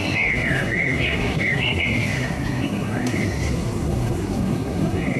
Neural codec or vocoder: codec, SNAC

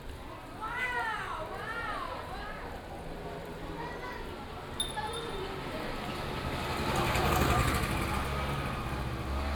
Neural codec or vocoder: none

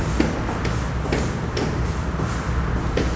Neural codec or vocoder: none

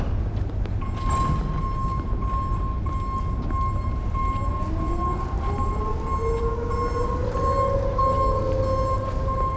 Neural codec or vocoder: none